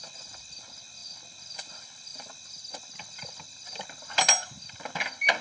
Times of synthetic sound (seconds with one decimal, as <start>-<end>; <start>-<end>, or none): none

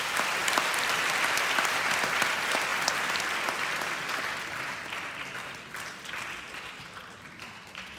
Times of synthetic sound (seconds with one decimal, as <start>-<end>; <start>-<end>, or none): none

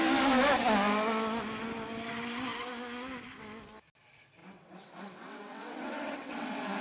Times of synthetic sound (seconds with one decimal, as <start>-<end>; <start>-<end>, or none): 4.4-6.8